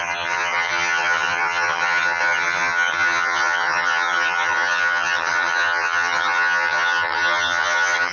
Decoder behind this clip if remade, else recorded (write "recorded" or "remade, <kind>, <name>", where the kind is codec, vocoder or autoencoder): remade, vocoder, HiFi-GAN